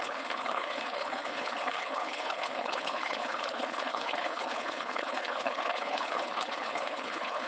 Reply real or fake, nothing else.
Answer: fake